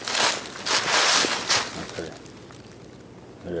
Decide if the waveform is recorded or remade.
recorded